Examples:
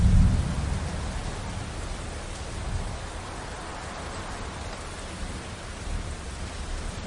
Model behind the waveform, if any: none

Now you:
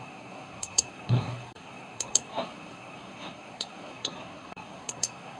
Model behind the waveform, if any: codec, SNAC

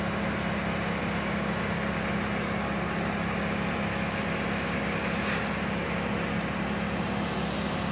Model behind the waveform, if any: none